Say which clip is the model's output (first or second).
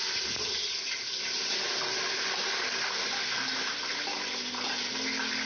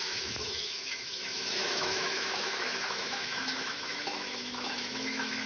second